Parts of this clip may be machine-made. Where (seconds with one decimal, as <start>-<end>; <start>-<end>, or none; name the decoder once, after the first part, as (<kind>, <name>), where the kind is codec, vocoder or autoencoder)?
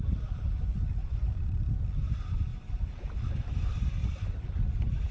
1.0-1.8 (vocoder, BigVGAN v2); 2.5-3.3; 4.0-5.1